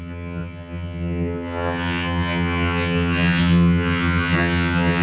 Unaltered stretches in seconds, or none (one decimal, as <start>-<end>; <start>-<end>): none